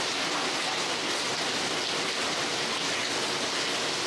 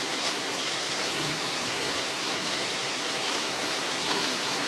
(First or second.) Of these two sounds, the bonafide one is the first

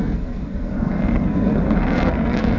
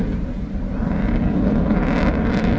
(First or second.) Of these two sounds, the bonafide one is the second